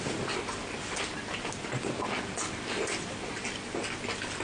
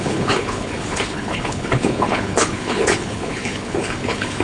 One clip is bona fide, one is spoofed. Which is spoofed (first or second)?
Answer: second